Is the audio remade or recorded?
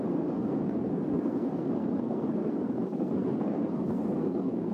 remade